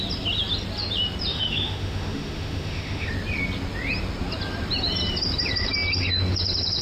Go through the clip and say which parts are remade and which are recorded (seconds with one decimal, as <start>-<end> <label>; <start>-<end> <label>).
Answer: 0.0-1.3 recorded; 1.3-3.1 remade; 3.1-6.8 recorded